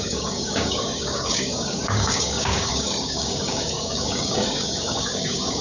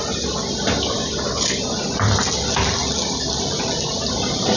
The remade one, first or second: first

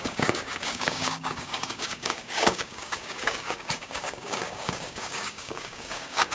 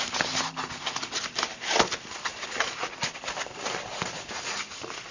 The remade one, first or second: first